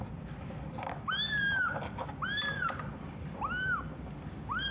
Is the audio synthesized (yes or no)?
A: no